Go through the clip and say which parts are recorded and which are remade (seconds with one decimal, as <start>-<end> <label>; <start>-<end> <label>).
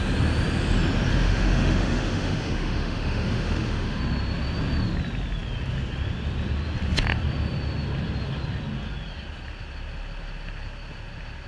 0.0-1.1 recorded; 1.1-4.0 remade; 4.0-11.5 recorded